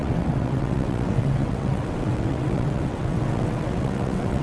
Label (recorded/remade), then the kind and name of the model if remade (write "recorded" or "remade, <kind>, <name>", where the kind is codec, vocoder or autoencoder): remade, vocoder, WaveNeXt